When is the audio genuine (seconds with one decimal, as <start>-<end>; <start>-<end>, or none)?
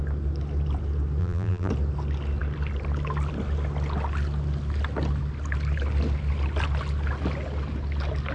0.0-1.2; 1.7-8.3